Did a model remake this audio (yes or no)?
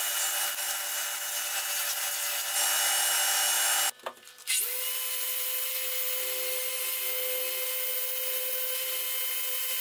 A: no